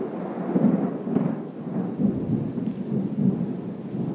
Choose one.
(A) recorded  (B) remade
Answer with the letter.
A